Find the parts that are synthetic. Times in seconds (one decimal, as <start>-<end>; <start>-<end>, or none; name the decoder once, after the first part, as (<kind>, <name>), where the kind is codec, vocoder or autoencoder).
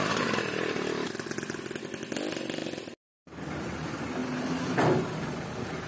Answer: none